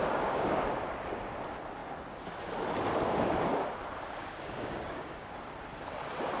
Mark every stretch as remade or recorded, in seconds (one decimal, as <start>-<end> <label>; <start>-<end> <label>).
0.0-0.7 remade; 0.7-4.2 recorded; 4.2-5.3 remade; 5.3-6.4 recorded